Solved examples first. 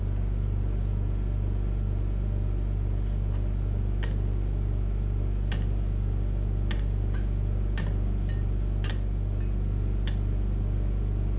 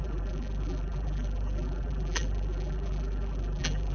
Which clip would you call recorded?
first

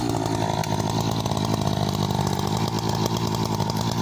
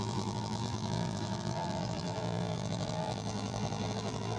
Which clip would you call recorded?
first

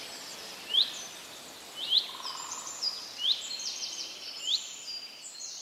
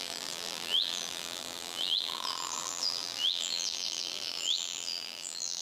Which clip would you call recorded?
first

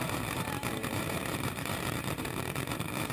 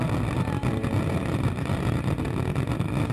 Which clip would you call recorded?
second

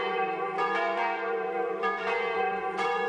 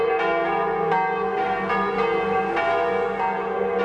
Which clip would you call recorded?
second